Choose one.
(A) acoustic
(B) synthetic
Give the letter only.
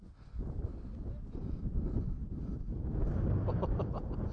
A